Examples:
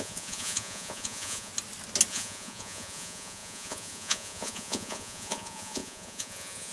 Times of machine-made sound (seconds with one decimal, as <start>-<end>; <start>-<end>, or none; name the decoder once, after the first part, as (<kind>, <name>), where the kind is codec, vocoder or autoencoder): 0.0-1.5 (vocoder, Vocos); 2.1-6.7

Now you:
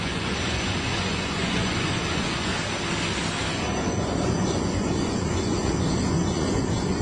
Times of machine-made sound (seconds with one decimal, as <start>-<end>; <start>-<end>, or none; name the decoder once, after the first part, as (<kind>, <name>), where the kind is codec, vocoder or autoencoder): 0.0-2.5 (vocoder, Vocos); 3.5-7.0

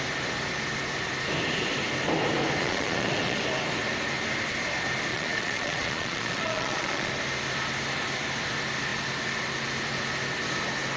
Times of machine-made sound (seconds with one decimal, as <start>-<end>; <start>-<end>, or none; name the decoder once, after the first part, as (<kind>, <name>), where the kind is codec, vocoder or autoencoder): 2.6-3.4 (vocoder, Vocos); 5.1-7.1